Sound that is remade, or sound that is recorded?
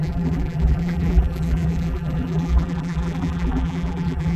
remade